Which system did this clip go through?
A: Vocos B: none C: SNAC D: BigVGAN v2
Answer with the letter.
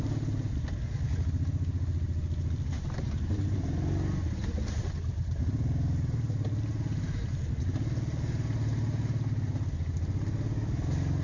B